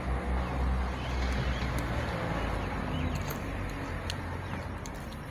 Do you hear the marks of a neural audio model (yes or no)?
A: no